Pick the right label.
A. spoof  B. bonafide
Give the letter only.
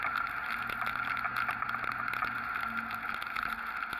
B